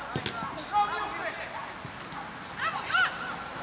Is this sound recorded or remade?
recorded